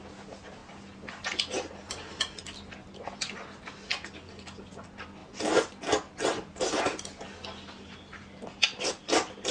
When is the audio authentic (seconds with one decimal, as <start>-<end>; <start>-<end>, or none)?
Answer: 0.0-9.5